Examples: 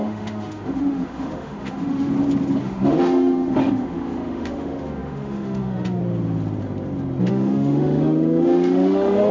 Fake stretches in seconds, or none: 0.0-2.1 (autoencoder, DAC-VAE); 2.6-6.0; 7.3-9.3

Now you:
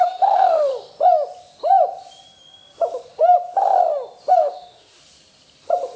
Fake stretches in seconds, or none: 0.0-0.7 (autoencoder, DAC-VAE); 4.3-5.0